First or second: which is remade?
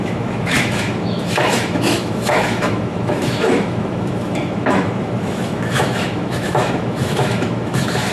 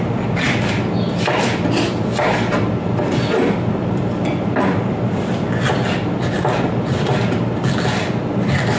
first